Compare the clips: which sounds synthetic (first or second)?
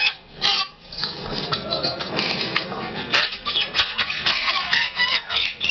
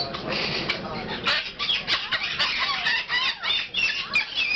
first